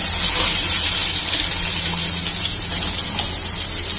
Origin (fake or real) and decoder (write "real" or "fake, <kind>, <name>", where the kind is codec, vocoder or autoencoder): real